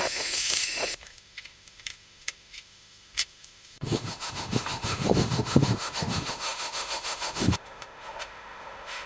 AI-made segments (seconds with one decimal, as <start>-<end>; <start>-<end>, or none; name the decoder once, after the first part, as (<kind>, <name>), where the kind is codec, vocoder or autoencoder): 0.0-9.1 (autoencoder, DAC-VAE)